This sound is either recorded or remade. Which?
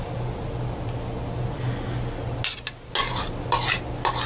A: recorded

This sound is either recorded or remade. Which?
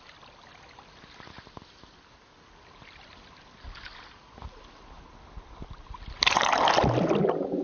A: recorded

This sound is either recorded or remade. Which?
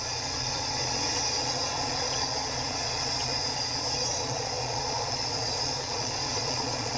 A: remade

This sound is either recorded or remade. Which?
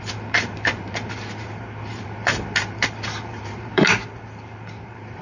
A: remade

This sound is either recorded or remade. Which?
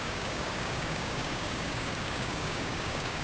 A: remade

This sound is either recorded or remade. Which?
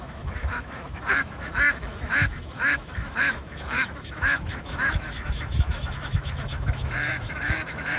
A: remade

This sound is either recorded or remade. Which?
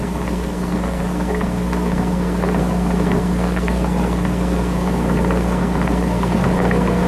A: remade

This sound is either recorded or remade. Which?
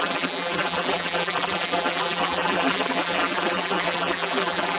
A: remade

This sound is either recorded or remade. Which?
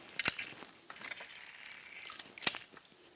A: recorded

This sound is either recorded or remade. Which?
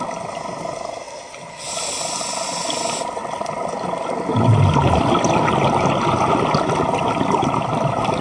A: recorded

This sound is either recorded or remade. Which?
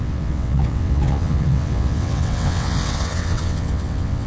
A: remade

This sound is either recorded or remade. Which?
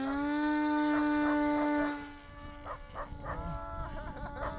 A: recorded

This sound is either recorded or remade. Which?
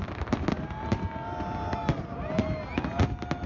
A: recorded